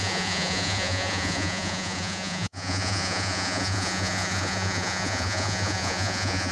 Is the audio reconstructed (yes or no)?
yes